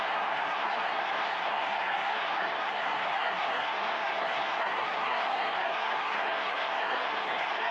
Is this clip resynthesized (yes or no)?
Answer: yes